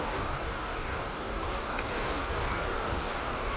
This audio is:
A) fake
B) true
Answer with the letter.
A